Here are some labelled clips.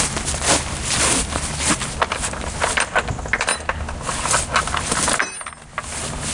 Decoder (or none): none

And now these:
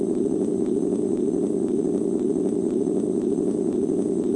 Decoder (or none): vocoder, BigVGAN v2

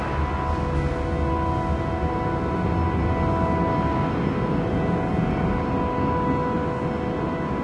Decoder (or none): none